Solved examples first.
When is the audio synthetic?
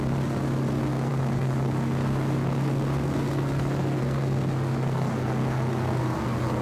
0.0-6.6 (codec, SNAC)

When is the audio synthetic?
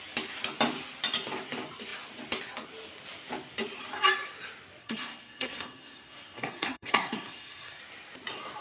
4.8-7.8 (codec, SNAC)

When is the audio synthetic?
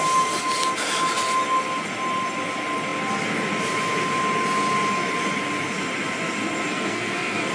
6.7-7.5 (codec, SNAC)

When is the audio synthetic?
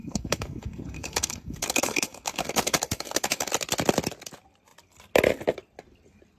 0.0-3.5 (codec, SNAC)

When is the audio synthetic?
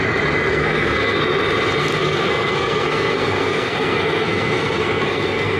0.5-1.2 (codec, SNAC); 1.8-5.6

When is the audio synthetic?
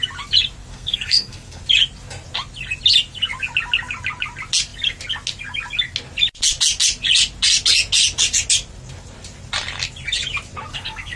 0.7-1.6 (codec, SNAC); 10.7-11.2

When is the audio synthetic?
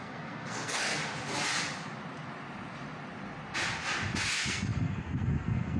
0.0-1.0 (codec, SNAC); 4.3-5.8